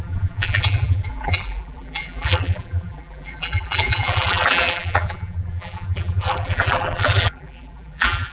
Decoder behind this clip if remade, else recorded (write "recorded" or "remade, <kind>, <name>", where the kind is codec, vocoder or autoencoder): remade, vocoder, BigVGAN v2